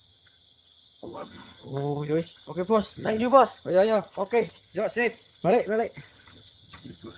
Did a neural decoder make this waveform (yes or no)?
yes